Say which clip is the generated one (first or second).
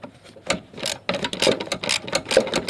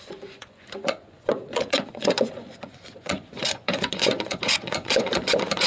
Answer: second